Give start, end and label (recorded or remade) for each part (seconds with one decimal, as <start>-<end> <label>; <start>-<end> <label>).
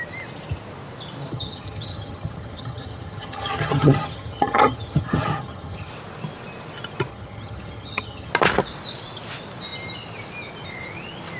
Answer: 0.0-1.3 recorded; 1.3-5.9 remade; 5.9-7.1 recorded; 7.1-8.3 remade; 8.3-11.4 recorded